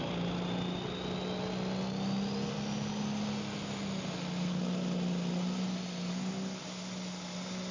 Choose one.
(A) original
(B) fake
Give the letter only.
A